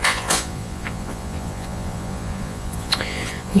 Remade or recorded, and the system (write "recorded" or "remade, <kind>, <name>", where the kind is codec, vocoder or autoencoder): remade, vocoder, Vocos